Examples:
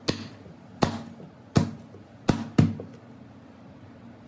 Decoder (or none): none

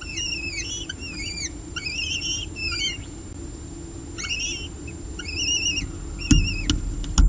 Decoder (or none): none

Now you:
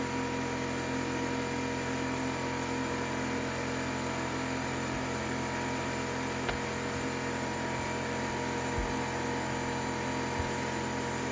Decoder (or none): none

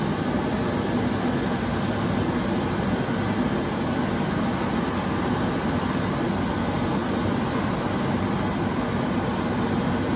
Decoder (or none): none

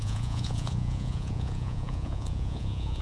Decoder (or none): vocoder, Vocos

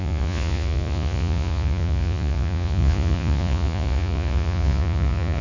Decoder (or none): vocoder, Vocos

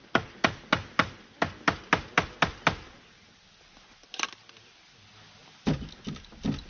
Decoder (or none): none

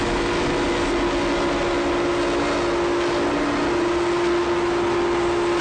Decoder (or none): none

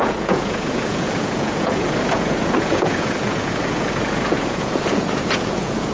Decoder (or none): vocoder, Vocos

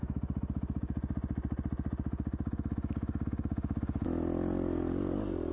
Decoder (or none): none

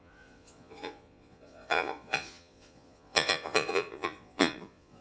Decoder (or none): vocoder, Vocos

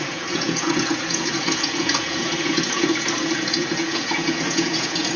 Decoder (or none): vocoder, Vocos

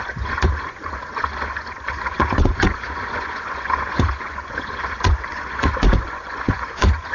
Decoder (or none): vocoder, Vocos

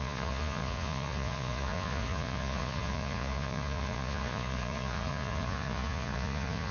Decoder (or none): vocoder, Vocos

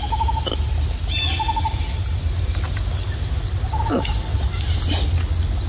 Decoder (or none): none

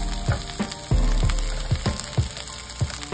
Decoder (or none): none